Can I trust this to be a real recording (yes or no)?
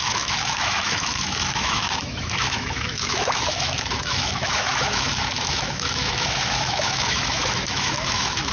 no